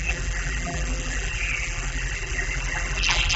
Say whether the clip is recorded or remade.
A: remade